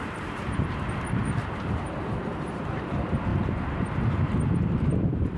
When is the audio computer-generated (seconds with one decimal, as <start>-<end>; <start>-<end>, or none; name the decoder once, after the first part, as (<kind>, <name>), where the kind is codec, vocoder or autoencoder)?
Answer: 0.0-5.4 (vocoder, BigVGAN v2)